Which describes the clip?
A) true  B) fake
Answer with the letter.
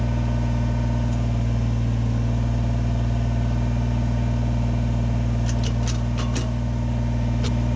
A